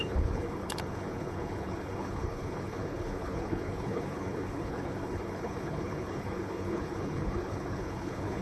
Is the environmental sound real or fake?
fake